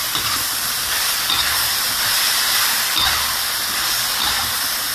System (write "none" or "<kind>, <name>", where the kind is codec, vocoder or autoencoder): vocoder, BigVGAN v2